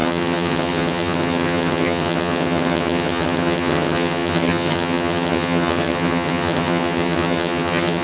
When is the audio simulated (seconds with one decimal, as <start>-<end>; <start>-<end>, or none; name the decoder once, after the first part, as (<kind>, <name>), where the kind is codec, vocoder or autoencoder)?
0.0-8.0 (vocoder, HiFi-GAN)